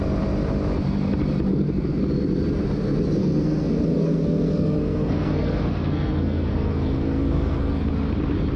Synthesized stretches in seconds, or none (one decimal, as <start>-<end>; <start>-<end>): 1.5-2.1; 3.2-7.8